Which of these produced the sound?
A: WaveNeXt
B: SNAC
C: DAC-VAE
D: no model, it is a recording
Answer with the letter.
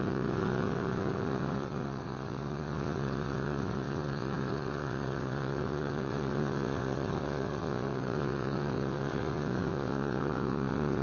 A